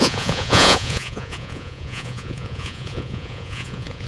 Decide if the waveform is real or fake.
fake